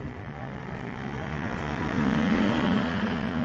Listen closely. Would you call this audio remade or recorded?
remade